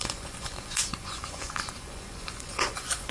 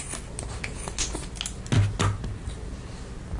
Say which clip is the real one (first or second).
second